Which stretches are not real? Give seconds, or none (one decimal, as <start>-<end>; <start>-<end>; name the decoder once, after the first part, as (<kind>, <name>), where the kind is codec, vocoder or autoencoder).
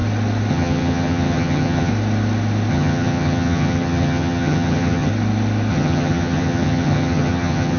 0.5-1.9 (vocoder, HiFi-GAN); 2.7-5.1; 5.7-7.8